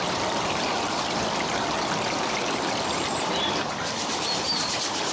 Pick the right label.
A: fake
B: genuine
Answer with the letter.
A